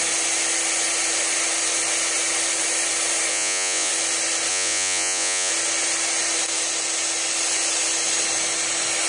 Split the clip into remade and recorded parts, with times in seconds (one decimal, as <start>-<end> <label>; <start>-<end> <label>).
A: 0.0-3.3 recorded; 3.3-3.9 remade; 3.9-4.5 recorded; 4.5-5.5 remade; 5.5-9.1 recorded